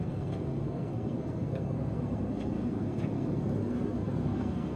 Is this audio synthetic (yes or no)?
yes